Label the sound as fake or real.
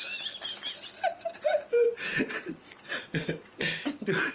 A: real